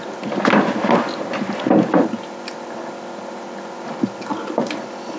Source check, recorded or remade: recorded